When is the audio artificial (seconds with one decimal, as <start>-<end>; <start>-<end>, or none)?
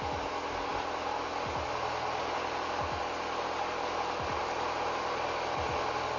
none